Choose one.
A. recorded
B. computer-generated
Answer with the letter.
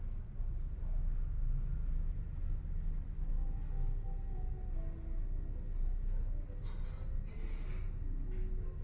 A